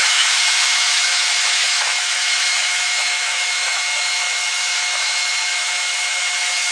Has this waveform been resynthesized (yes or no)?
yes